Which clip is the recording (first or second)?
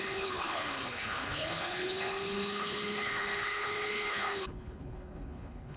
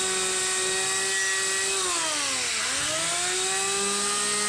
second